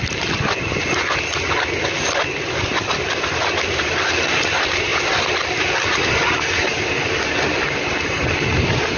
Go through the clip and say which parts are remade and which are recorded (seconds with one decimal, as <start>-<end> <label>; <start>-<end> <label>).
0.0-9.0 recorded